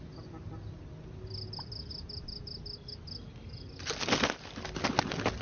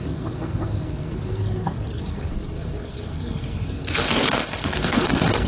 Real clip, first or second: first